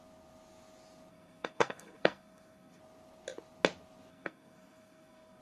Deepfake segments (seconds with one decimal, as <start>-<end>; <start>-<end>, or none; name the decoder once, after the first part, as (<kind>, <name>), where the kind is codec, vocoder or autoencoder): 1.1-2.8 (codec, SNAC); 4.1-5.4